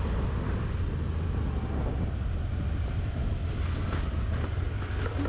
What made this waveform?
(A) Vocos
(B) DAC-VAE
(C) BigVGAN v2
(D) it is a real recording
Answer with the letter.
C